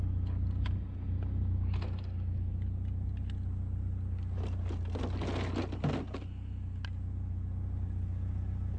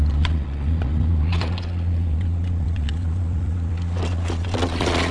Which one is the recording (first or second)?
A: first